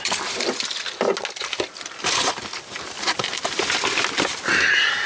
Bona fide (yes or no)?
yes